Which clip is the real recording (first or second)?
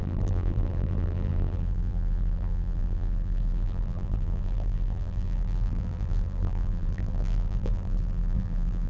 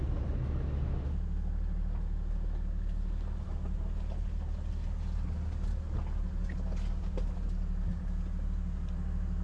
second